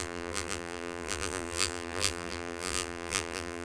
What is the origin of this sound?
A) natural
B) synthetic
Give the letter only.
B